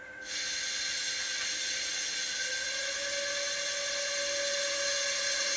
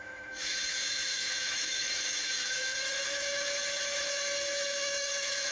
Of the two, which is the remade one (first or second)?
second